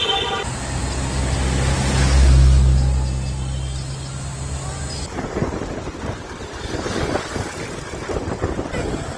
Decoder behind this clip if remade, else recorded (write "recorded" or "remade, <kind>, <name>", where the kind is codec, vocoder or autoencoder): recorded